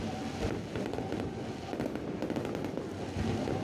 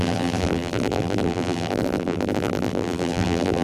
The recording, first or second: first